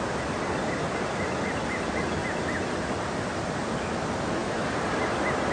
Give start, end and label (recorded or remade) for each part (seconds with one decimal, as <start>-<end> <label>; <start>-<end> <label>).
0.0-5.5 recorded